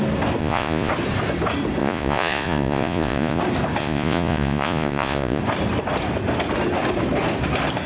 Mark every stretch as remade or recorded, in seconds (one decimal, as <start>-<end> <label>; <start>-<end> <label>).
0.0-0.4 recorded; 0.4-0.9 remade; 0.9-1.8 recorded; 1.8-3.4 remade; 3.4-3.8 recorded; 3.8-5.4 remade; 5.4-7.9 recorded